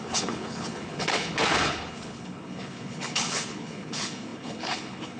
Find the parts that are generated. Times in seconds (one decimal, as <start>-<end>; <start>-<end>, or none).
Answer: 0.0-5.2